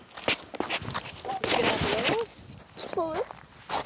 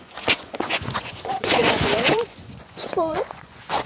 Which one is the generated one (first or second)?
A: second